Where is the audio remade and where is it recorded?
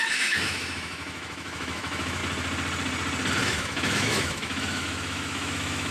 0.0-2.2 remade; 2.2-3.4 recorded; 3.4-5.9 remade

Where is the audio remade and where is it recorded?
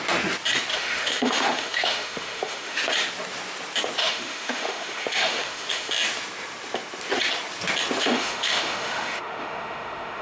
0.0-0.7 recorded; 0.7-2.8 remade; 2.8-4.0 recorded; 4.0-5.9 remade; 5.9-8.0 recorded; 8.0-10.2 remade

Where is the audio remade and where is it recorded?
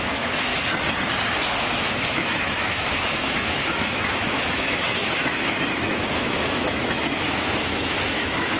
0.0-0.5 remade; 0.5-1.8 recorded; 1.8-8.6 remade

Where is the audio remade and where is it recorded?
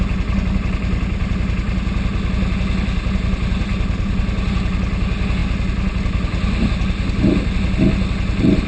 0.0-8.7 recorded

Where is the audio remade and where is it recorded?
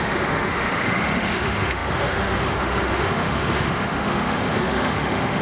0.0-5.4 remade